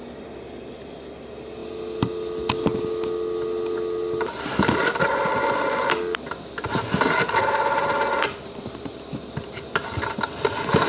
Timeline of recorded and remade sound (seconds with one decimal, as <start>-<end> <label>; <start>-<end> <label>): 0.0-10.9 recorded